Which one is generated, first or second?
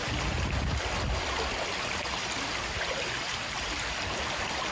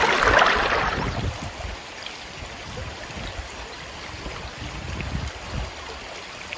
second